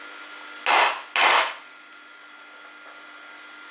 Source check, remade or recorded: recorded